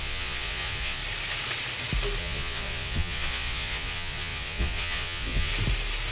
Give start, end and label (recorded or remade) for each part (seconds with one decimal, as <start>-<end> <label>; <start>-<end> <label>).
0.0-1.0 remade; 1.0-2.2 recorded; 2.2-5.5 remade; 5.5-6.1 recorded